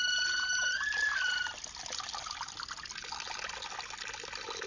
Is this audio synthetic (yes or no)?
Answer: no